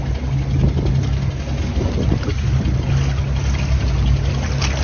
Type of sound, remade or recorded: recorded